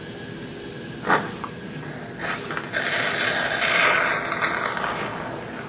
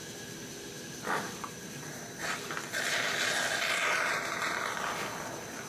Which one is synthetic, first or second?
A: second